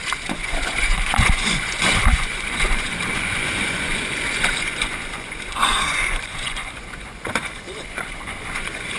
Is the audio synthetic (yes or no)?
yes